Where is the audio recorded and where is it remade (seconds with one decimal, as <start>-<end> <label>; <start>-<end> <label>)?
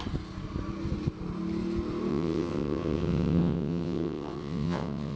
0.0-2.1 recorded; 2.1-5.2 remade